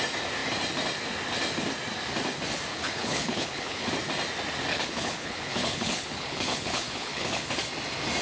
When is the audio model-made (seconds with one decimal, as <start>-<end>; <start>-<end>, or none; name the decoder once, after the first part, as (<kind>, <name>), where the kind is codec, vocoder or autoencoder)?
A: 2.7-3.9 (codec, HILCodec); 4.7-7.6